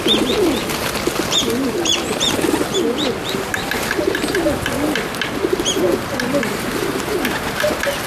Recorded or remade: recorded